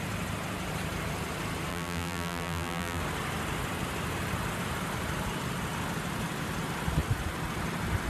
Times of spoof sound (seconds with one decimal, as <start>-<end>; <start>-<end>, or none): 1.7-3.0